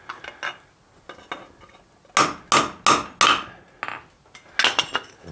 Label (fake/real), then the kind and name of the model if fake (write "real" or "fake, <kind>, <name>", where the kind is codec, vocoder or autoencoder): real